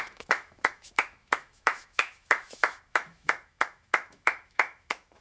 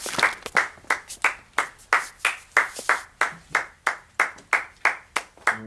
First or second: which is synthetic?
first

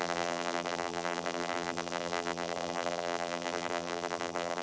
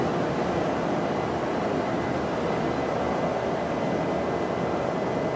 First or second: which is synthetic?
first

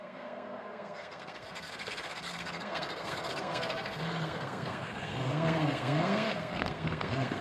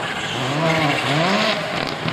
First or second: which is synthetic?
first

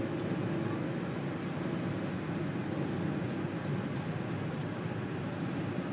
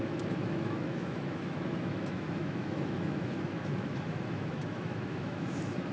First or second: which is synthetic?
second